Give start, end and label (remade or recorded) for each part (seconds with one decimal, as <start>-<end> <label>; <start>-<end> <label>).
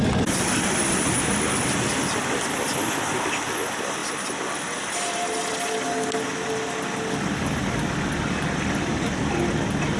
0.0-10.0 recorded